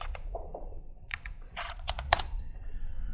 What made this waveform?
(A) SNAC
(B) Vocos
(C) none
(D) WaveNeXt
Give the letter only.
B